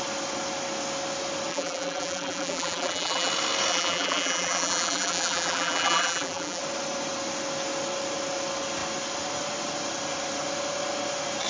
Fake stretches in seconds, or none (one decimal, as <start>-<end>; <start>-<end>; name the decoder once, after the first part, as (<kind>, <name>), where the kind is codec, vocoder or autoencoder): 1.5-3.3 (vocoder, BigVGAN v2); 3.7-6.6